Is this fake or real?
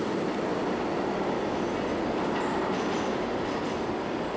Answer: real